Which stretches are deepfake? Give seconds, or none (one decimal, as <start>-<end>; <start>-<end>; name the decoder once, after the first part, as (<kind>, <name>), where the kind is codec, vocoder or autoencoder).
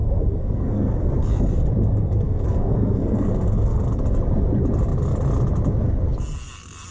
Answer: 0.0-1.1 (codec, SNAC); 1.9-4.0